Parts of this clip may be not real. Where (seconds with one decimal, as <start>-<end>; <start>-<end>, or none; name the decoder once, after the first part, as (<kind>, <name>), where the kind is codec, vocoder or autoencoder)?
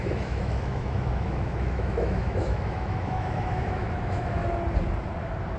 0.0-4.4 (autoencoder, DAC-VAE)